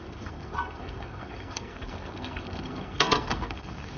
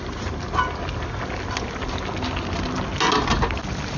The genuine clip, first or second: second